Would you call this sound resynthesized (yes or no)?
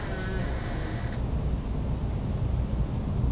no